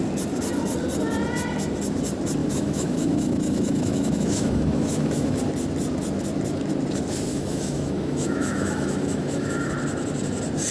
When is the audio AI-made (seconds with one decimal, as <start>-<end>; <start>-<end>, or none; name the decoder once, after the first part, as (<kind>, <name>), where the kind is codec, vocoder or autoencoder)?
2.4-5.4 (autoencoder, DAC-VAE); 7.3-9.7